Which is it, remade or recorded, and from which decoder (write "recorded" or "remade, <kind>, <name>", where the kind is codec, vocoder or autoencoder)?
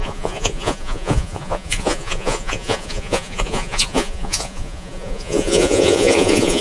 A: remade, vocoder, Vocos